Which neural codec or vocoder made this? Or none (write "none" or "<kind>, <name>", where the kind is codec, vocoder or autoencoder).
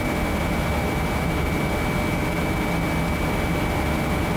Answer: none